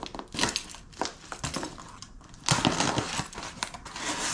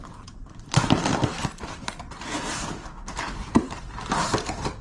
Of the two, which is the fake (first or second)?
second